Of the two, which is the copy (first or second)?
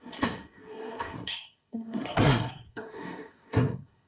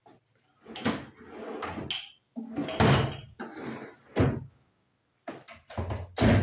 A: first